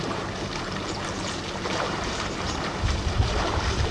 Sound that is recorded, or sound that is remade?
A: remade